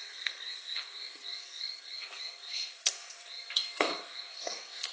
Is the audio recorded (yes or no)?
no